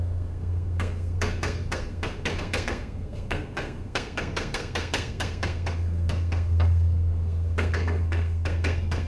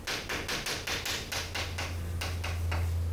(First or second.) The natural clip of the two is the second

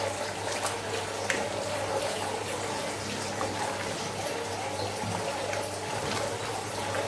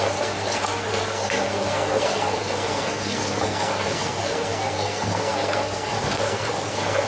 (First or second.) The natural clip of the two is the first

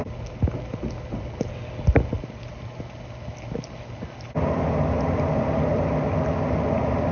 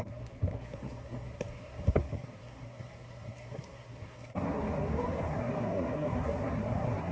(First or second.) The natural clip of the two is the first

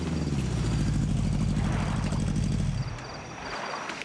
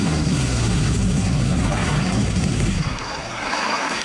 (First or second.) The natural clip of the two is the first